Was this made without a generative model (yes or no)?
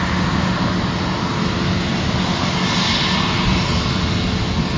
yes